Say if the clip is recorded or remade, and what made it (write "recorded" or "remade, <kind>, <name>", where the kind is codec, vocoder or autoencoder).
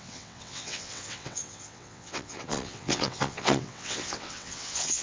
remade, vocoder, WaveNeXt